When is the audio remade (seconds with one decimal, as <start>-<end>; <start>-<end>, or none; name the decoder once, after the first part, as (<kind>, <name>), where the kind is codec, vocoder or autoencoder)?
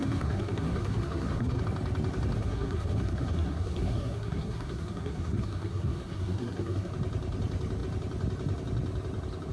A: 0.0-1.6 (codec, SNAC); 2.4-6.9